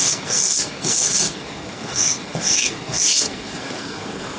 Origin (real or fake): fake